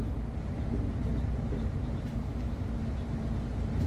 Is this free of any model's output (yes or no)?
yes